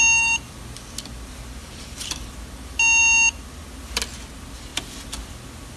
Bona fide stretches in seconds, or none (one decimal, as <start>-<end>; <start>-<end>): 0.0-1.6; 2.3-5.8